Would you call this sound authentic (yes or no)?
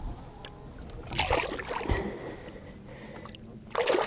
yes